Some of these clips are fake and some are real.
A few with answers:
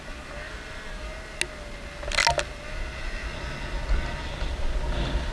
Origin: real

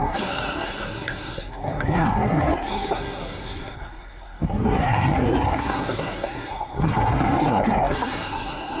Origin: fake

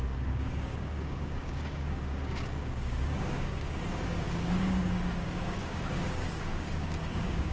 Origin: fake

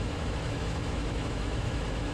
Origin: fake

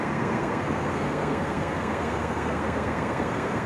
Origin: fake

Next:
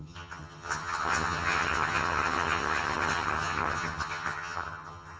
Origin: fake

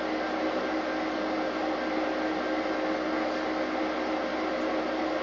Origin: real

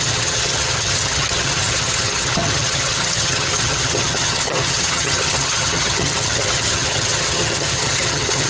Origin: fake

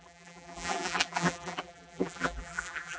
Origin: fake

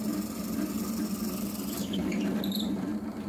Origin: real